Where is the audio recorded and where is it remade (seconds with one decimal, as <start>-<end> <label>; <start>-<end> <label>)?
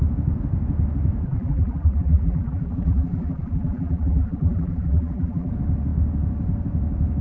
0.0-1.2 recorded; 1.2-5.5 remade; 5.5-7.2 recorded